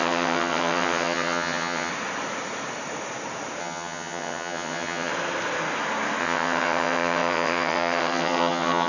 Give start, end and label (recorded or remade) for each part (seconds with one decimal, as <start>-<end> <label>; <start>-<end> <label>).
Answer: 0.0-1.9 remade; 1.9-3.6 recorded; 3.6-5.1 remade; 5.1-6.2 recorded; 6.2-8.9 remade